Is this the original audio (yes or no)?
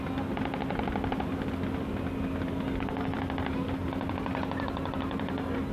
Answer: yes